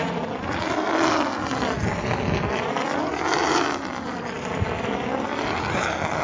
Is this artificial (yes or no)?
no